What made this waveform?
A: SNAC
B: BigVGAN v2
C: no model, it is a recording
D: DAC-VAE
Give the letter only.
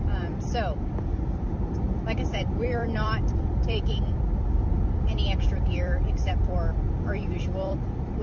B